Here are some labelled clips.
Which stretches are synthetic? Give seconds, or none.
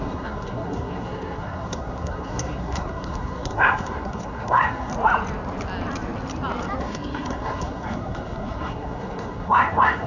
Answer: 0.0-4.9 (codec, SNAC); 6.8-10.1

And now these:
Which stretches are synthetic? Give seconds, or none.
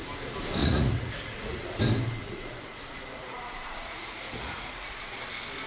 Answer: 0.6-1.8 (vocoder, Vocos); 2.2-5.2